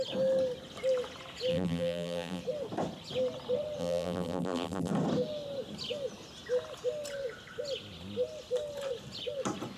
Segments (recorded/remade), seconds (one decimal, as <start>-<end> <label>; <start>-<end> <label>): 0.0-1.5 recorded; 1.5-2.4 remade; 2.4-3.8 recorded; 3.8-4.9 remade; 4.9-9.8 recorded